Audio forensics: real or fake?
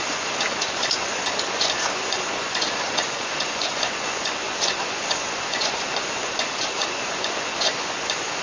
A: fake